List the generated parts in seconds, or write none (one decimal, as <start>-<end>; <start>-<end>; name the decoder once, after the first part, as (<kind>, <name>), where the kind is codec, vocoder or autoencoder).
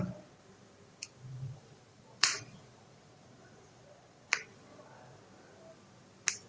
1.3-5.2 (vocoder, Vocos)